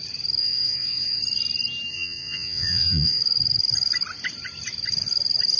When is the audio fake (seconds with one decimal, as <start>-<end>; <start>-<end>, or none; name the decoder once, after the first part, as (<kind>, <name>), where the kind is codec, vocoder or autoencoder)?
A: 0.4-1.2 (vocoder, Vocos); 1.9-3.2